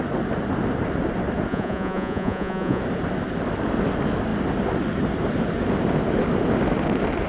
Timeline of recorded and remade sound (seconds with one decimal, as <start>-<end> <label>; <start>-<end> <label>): 0.0-1.5 recorded; 1.5-2.8 remade; 2.8-7.3 recorded